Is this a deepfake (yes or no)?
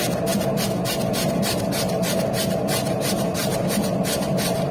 no